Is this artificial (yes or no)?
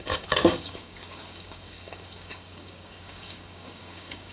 yes